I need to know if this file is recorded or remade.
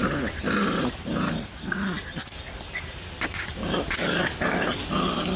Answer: recorded